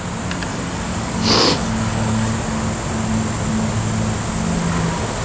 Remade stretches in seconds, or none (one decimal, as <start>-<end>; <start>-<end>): 0.5-2.3